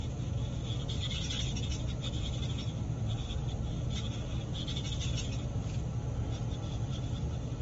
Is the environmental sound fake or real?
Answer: real